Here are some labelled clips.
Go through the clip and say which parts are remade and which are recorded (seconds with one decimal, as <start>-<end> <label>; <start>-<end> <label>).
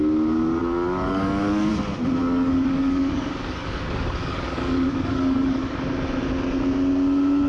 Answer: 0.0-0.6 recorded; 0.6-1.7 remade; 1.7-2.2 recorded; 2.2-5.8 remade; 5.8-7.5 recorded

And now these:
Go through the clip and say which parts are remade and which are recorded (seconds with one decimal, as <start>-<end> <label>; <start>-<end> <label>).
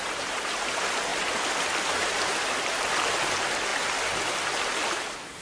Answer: 0.0-5.4 recorded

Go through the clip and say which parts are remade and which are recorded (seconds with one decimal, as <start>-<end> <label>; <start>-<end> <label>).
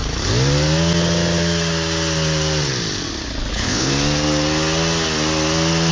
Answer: 0.0-3.5 recorded; 3.5-3.9 remade; 3.9-5.9 recorded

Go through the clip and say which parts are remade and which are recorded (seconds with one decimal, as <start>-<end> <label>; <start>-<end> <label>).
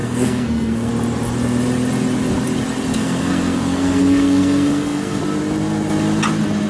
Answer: 0.0-0.9 remade; 0.9-2.9 recorded; 2.9-5.2 remade; 5.2-6.7 recorded